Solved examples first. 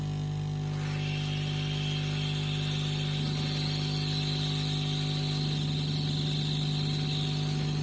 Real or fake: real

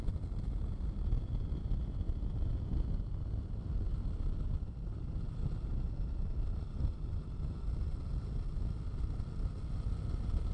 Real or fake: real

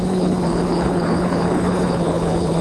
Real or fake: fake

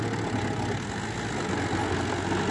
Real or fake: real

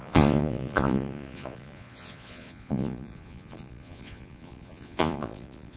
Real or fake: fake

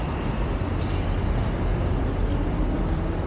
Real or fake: real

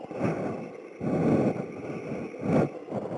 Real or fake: real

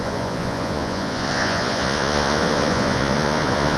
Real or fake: fake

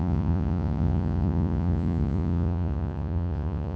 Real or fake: fake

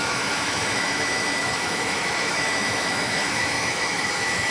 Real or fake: fake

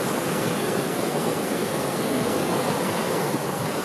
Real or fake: fake